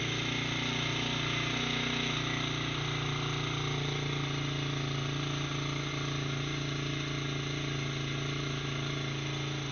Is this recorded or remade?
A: recorded